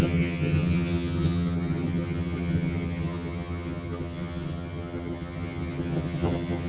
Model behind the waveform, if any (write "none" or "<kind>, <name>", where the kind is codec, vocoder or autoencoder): vocoder, HiFi-GAN